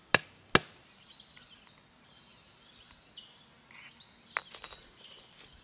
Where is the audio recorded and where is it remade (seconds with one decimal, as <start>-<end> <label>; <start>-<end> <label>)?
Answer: 0.0-5.6 recorded